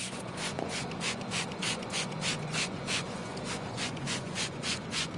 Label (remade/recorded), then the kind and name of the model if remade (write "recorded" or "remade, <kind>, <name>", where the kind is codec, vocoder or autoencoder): remade, vocoder, Vocos